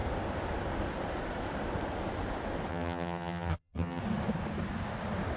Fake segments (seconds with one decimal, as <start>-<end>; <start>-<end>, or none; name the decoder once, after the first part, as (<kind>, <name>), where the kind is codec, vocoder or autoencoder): 2.7-4.0 (vocoder, HiFi-GAN)